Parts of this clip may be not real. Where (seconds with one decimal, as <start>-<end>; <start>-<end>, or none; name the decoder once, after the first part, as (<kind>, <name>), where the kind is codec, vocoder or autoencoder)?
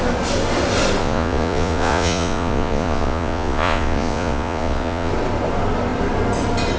1.0-5.1 (vocoder, Vocos)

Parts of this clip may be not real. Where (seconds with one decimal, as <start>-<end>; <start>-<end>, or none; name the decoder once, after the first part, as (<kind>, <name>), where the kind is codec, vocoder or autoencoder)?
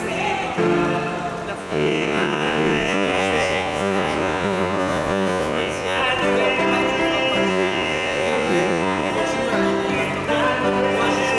1.6-6.0 (vocoder, Vocos); 7.5-9.1